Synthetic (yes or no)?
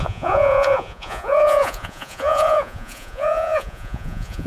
yes